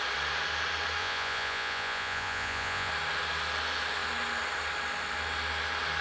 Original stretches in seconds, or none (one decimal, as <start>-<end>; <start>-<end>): 0.0-1.0; 2.9-6.0

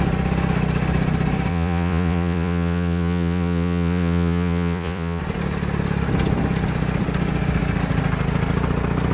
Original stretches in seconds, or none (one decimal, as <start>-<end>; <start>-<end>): 0.0-1.5; 5.2-9.1

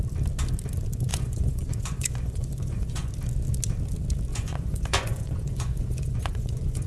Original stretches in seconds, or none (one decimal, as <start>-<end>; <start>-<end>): 0.0-1.1; 3.1-4.3

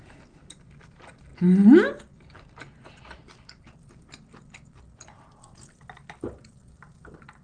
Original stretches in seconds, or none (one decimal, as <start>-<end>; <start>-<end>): 0.0-7.4

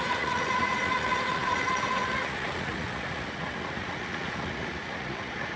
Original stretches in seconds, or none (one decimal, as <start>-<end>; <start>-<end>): none

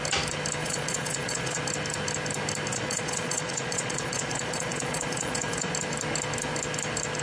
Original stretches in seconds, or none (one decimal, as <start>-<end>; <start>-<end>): 0.0-0.6; 1.6-2.7; 5.7-7.2